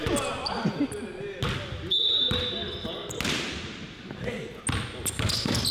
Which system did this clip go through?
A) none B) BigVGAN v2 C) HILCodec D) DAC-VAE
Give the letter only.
A